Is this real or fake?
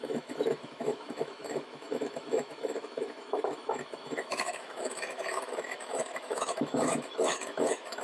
fake